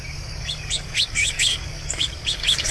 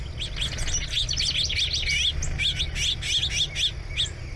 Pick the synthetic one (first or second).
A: first